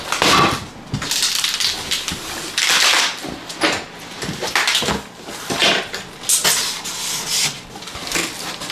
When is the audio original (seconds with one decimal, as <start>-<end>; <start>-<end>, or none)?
0.0-8.7